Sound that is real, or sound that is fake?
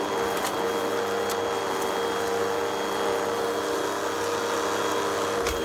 real